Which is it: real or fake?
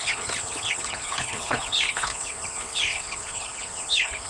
fake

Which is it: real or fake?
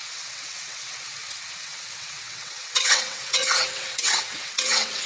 fake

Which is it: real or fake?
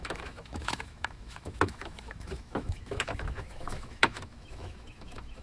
fake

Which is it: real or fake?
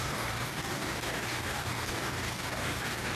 fake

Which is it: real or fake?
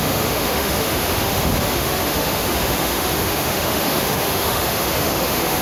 fake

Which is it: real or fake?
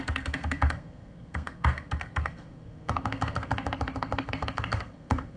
fake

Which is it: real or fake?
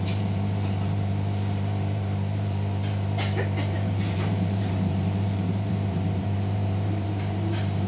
fake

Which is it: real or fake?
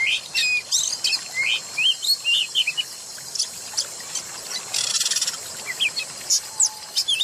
real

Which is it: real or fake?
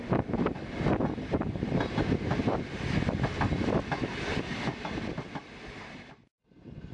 fake